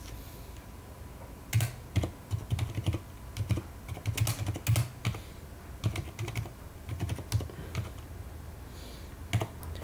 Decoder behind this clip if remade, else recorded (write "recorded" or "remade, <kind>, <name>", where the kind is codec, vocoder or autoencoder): recorded